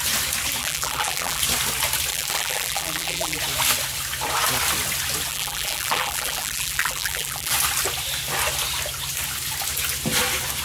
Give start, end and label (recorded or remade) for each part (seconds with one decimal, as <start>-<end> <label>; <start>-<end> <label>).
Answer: 0.0-0.6 recorded; 0.6-1.4 remade; 1.4-2.1 recorded; 2.1-3.4 remade; 3.4-5.3 recorded; 5.3-7.5 remade; 7.5-10.6 recorded